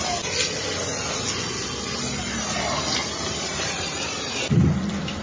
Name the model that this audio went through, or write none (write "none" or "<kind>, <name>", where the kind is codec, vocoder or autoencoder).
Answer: none